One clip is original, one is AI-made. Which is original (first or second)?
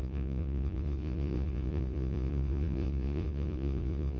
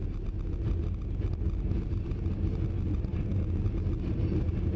second